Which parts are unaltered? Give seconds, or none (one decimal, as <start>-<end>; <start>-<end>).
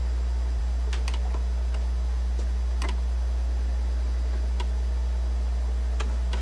0.0-6.4